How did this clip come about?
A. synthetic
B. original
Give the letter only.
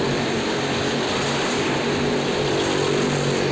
B